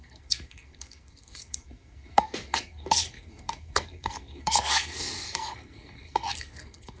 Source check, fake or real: fake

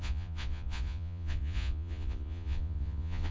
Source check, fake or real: fake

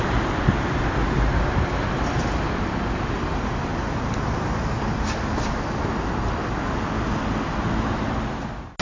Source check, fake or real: real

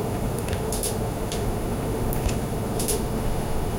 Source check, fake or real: fake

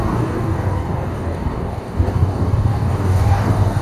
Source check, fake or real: fake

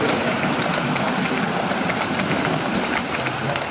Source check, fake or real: real